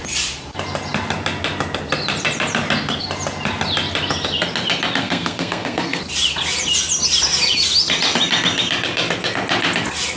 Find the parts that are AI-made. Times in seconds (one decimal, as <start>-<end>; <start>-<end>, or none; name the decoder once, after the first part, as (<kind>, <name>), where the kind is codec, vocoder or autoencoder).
5.0-6.0 (codec, SNAC)

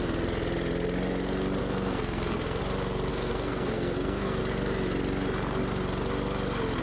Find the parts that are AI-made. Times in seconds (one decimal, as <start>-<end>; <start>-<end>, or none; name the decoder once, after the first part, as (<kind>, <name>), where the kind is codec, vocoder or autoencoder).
1.6-2.6 (codec, SNAC); 3.1-4.4

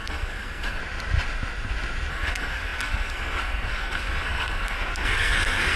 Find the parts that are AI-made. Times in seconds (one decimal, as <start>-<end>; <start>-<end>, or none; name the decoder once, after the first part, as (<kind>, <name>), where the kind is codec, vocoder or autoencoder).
0.0-0.8 (codec, SNAC); 2.1-5.8